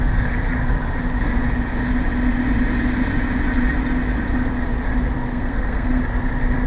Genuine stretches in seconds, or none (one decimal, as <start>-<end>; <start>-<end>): 0.0-5.3; 6.0-6.7